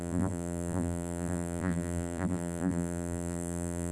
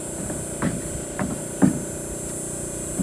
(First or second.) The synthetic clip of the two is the first